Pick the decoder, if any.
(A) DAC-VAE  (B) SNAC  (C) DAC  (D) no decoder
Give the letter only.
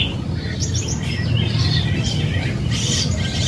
D